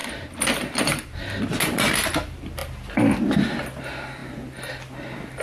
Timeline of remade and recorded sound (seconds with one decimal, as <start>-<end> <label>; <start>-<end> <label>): 0.0-5.4 recorded